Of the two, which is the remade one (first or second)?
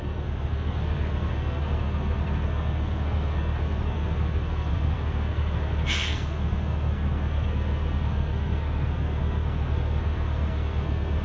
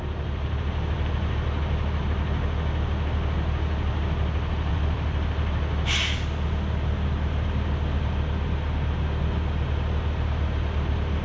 first